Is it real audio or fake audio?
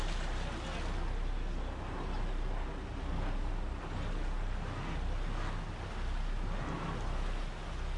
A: real